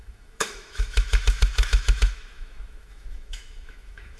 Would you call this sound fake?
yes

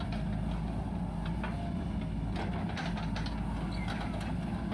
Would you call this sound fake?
no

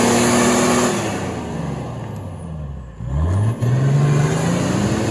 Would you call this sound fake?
no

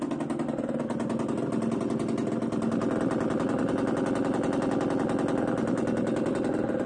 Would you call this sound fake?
no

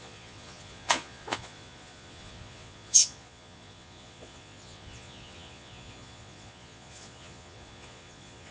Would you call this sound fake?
yes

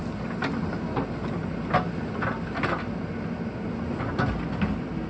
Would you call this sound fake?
no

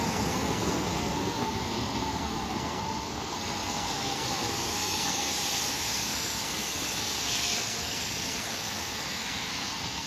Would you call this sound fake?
yes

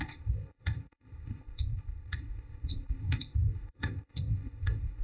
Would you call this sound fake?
yes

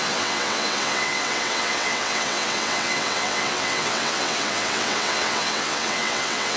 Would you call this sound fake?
yes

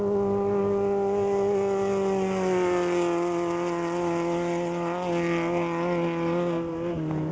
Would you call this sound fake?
no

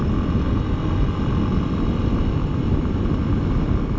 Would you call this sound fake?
no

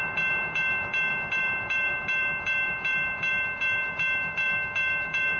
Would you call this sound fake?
yes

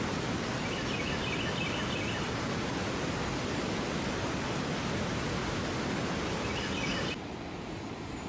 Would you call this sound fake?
no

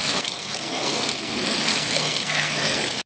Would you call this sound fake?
yes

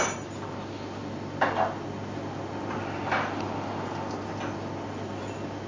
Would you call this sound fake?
no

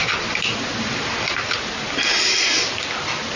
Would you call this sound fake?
no